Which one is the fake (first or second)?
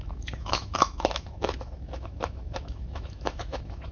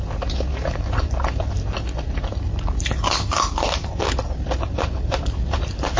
first